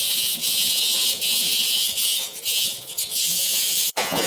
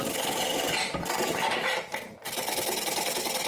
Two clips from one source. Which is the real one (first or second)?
second